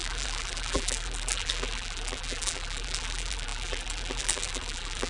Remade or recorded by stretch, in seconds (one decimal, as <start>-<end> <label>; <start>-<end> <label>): 0.0-5.1 remade